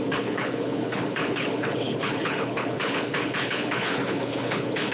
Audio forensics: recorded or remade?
remade